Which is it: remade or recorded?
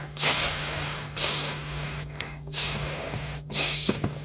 remade